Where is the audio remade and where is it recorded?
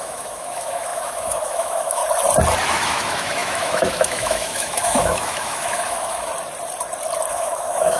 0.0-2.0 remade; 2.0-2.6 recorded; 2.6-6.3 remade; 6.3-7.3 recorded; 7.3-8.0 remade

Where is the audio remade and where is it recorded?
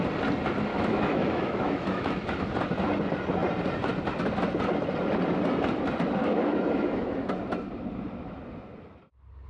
0.0-0.7 recorded; 0.7-2.4 remade; 2.4-6.2 recorded; 6.2-7.3 remade; 7.3-9.5 recorded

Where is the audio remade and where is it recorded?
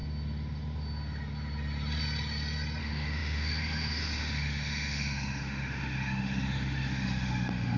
0.0-2.8 recorded; 2.8-7.8 remade